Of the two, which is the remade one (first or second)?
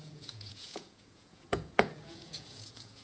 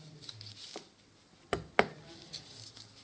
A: first